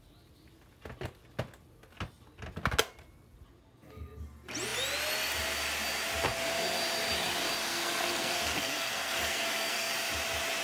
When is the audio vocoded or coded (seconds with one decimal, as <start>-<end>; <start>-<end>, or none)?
7.7-9.9